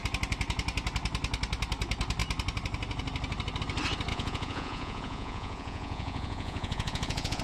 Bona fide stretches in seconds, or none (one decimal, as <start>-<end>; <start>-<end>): 0.0-4.1